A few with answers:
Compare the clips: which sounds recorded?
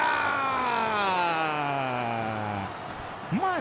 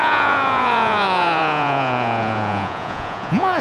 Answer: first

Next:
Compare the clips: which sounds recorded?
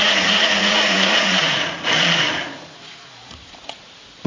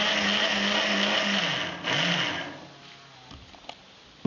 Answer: second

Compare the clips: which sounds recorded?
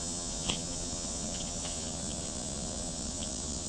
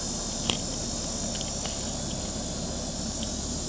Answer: second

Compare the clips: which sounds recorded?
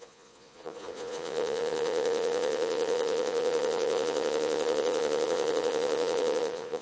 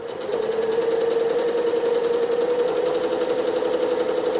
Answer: second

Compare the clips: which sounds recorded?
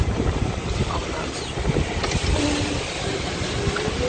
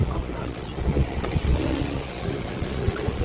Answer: first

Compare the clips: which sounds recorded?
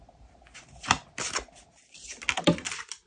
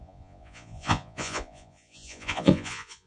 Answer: first